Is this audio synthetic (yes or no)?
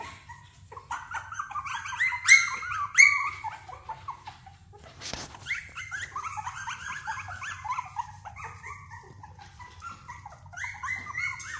no